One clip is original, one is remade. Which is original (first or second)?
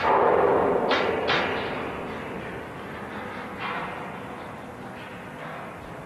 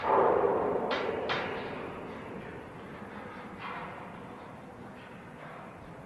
first